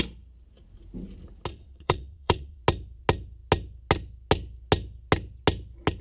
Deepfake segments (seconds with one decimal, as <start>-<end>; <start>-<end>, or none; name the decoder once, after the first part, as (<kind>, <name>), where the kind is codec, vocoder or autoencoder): 1.5-2.6 (vocoder, WaveNeXt)